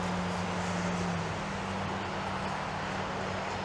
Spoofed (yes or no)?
no